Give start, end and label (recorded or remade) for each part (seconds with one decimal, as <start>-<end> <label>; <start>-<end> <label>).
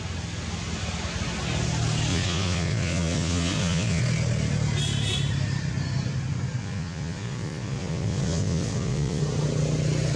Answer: 0.0-2.1 recorded; 2.1-4.0 remade; 4.0-6.6 recorded; 6.6-9.2 remade; 9.2-10.2 recorded